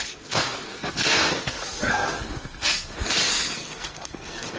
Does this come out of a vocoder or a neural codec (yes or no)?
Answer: yes